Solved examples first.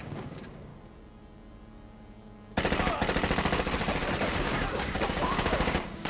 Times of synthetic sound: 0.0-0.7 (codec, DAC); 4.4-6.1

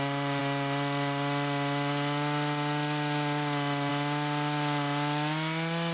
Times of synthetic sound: none